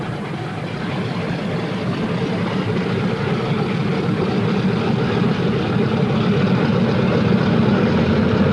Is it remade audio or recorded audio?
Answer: recorded